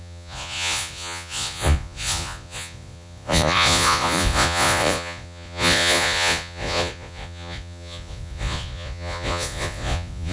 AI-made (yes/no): yes